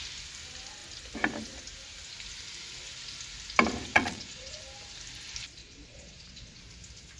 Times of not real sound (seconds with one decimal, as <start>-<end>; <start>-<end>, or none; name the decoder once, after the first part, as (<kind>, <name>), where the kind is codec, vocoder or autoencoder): 3.9-4.6 (vocoder, Vocos); 5.6-6.6